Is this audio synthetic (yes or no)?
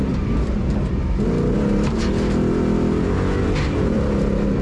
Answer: no